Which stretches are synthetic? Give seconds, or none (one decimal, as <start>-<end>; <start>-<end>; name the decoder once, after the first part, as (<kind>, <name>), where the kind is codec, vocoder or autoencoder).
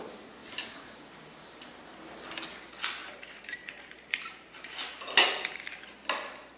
0.4-1.9 (vocoder, BigVGAN v2); 3.0-4.7